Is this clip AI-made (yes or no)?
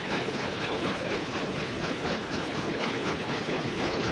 yes